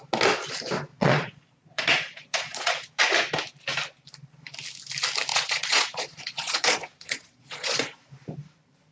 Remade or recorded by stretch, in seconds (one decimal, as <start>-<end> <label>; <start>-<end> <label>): 0.0-0.9 recorded; 0.9-3.0 remade; 3.0-5.3 recorded; 5.3-8.1 remade; 8.1-8.9 recorded